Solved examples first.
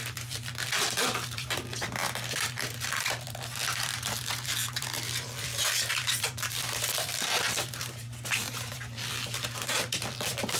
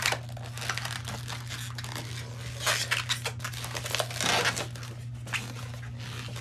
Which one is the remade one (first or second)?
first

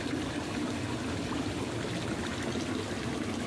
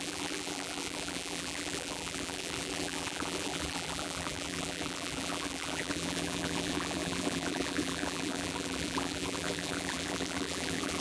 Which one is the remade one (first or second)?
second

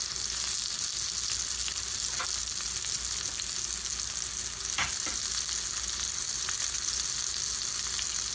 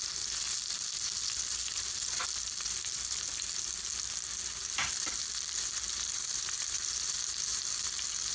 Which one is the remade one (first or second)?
second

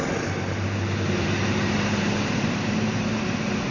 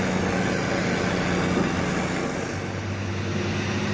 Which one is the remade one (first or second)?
first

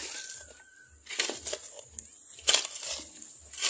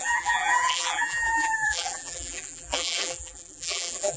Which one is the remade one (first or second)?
second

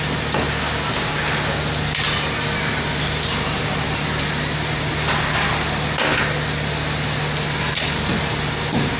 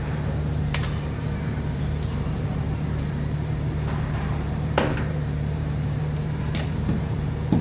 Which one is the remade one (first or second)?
second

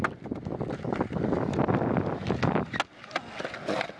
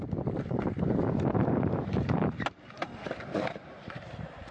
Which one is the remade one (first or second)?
second